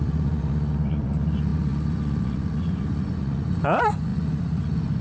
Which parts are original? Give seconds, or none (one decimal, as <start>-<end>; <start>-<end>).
none